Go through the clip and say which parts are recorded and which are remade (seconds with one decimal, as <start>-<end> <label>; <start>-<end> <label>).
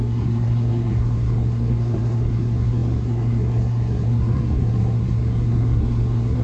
0.0-6.4 remade